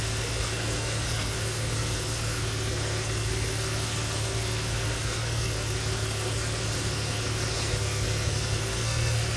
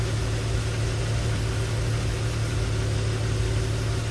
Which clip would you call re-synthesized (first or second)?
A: first